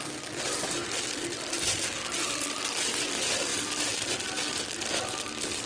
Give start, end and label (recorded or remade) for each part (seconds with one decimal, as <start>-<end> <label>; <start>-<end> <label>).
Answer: 0.0-5.7 recorded